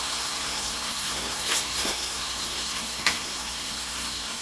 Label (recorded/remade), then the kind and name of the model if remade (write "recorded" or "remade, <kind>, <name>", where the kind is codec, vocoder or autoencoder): remade, codec, SNAC